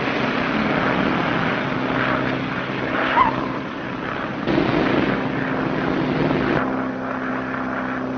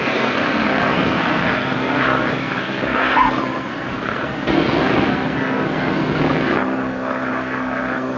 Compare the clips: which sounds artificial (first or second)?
second